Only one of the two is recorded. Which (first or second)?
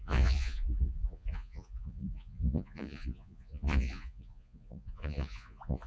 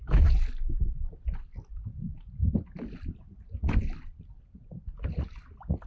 second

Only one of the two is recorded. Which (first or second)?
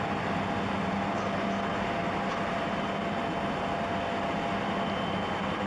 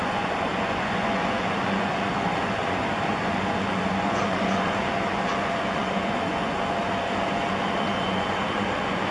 first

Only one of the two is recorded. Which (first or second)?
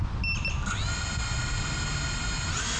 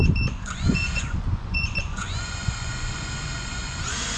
first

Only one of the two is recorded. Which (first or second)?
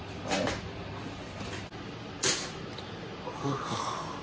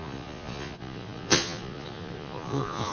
first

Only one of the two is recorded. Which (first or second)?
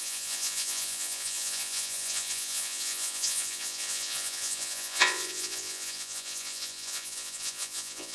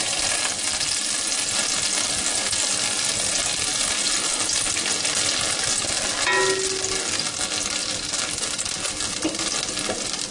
second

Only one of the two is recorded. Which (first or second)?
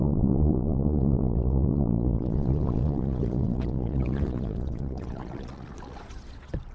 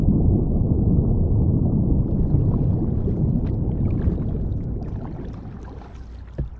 second